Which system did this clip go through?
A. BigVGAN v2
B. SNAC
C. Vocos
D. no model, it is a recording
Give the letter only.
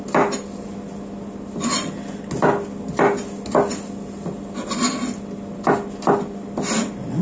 D